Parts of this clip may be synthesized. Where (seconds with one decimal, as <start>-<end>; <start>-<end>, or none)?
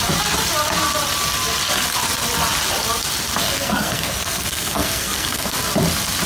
3.4-5.6